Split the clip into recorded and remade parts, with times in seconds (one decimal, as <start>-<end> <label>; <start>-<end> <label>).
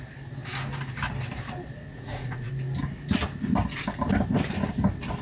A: 0.0-1.9 recorded; 1.9-2.5 remade; 2.5-5.2 recorded